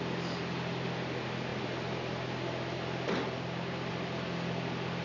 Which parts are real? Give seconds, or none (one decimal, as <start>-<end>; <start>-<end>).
0.0-5.0